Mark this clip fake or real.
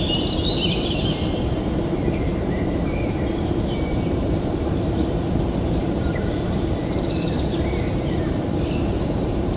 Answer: fake